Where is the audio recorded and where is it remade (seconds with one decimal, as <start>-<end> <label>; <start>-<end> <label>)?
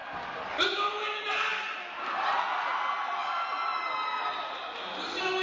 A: 0.0-5.4 recorded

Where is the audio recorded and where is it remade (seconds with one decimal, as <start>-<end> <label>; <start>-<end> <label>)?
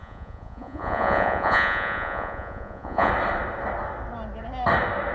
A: 0.0-3.1 remade; 3.1-5.1 recorded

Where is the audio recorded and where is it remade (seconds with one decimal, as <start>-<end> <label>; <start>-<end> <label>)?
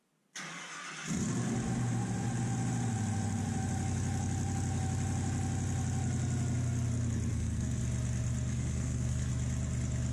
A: 0.0-7.3 recorded; 7.3-7.8 remade; 7.8-8.5 recorded; 8.5-9.3 remade; 9.3-10.1 recorded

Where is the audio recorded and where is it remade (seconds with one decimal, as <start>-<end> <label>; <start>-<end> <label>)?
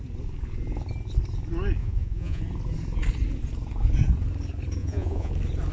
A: 0.0-1.8 recorded; 1.8-2.4 remade; 2.4-4.8 recorded; 4.8-5.3 remade; 5.3-5.7 recorded